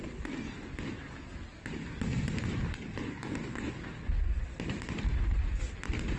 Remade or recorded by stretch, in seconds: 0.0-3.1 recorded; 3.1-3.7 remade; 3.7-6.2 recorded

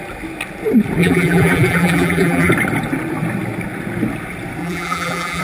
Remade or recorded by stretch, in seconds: 0.0-1.0 recorded; 1.0-2.5 remade; 2.5-4.6 recorded; 4.6-5.4 remade

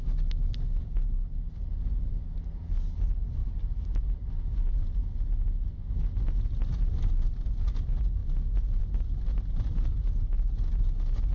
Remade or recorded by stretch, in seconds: 0.0-11.3 recorded